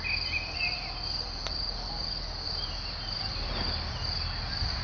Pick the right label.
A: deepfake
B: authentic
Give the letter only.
B